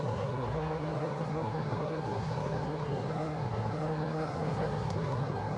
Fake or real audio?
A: fake